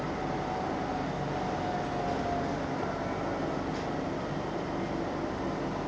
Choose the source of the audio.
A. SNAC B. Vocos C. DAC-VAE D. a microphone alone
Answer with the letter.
D